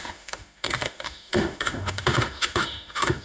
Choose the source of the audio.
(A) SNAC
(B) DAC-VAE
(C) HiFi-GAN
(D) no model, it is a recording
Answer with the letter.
B